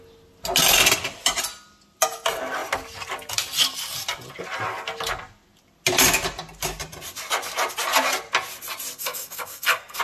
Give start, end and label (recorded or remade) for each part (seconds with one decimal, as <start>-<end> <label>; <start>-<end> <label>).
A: 0.0-9.0 recorded; 9.0-10.0 remade